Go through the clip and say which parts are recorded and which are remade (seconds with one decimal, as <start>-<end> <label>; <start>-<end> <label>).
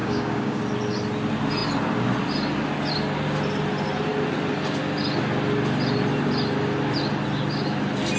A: 0.0-0.6 remade; 0.6-8.2 recorded